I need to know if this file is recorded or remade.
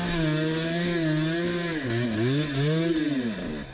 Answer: recorded